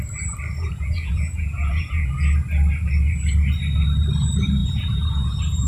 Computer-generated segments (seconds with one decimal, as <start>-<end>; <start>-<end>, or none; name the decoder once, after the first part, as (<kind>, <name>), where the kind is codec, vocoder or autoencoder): 0.6-2.1 (vocoder, Vocos); 4.6-5.7